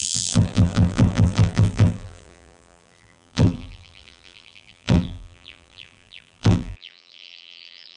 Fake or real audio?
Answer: fake